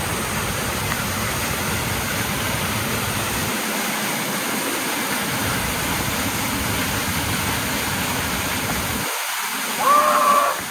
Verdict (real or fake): real